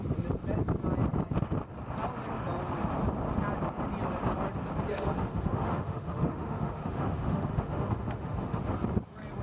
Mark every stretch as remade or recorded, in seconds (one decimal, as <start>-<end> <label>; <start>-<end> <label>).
0.0-4.9 recorded; 4.9-8.6 remade; 8.6-9.4 recorded